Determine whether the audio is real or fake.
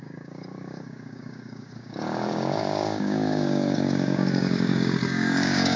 fake